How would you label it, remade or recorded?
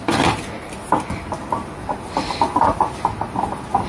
recorded